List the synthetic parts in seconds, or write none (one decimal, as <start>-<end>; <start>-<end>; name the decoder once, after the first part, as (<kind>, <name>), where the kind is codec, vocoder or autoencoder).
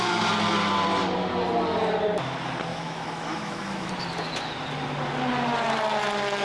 2.7-3.9 (autoencoder, DAC-VAE)